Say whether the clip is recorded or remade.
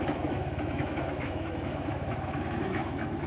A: remade